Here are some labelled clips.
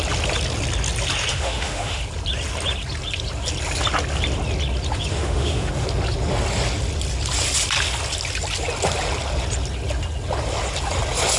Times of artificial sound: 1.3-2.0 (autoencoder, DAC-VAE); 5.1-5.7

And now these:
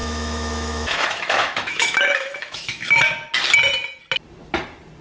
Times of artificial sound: 0.0-3.0 (autoencoder, DAC-VAE)

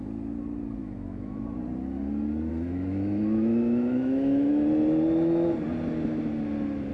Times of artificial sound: 0.8-1.4 (autoencoder, DAC-VAE); 2.5-4.5